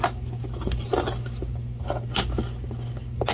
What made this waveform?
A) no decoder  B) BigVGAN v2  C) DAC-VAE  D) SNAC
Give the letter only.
A